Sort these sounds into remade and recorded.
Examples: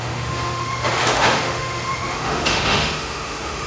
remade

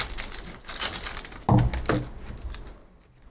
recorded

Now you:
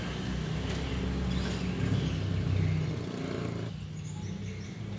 recorded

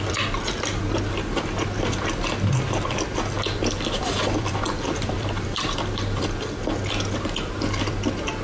remade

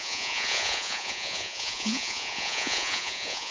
remade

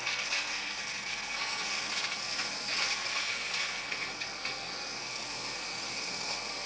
remade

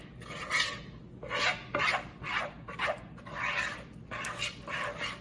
recorded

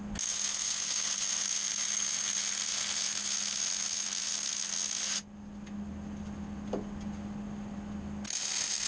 recorded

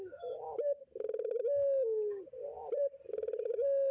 recorded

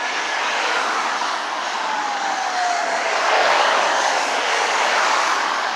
remade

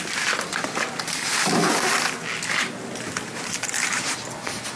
recorded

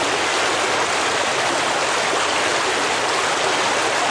recorded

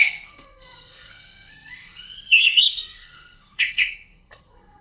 remade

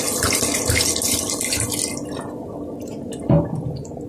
recorded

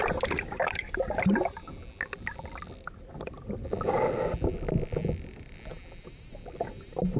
recorded